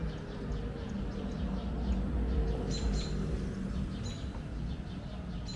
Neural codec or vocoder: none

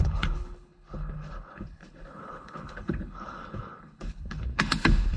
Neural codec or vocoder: codec, HILCodec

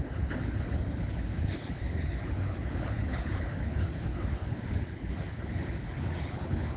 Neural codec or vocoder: codec, HILCodec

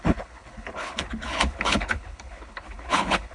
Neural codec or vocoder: codec, HILCodec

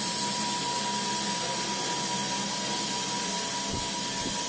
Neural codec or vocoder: none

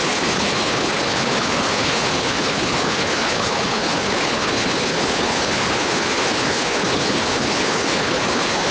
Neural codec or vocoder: codec, HILCodec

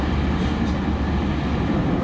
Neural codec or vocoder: none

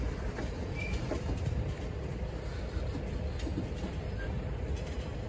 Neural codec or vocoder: none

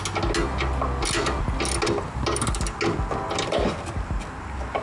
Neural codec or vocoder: none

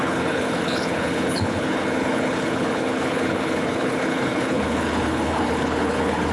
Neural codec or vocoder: codec, HILCodec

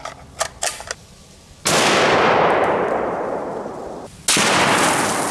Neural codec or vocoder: none